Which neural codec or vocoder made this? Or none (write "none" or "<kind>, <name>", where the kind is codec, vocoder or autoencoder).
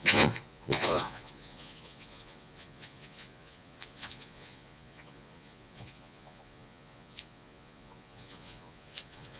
vocoder, Vocos